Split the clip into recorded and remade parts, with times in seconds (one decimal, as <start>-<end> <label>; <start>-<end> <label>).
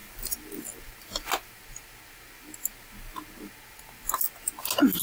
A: 0.0-5.0 recorded